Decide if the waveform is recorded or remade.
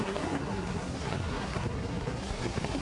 remade